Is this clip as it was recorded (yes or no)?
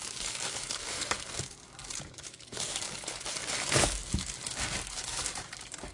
no